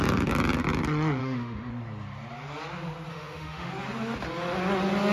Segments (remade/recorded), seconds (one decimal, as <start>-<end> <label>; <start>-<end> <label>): 0.0-1.2 recorded; 1.2-1.7 remade; 1.7-3.1 recorded; 3.1-3.7 remade; 3.7-5.1 recorded